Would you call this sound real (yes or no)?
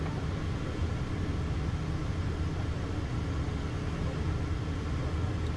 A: yes